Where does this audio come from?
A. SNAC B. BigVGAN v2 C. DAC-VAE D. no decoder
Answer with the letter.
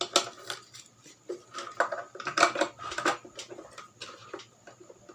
D